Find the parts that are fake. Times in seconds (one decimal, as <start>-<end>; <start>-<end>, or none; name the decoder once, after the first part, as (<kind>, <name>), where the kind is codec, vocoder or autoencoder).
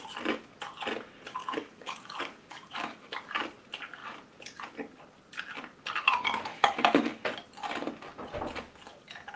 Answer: 1.4-3.1 (codec, DAC); 6.5-7.1